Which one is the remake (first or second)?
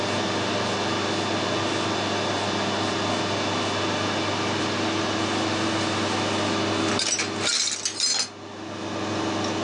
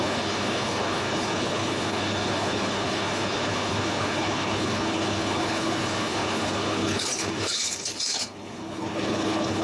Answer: second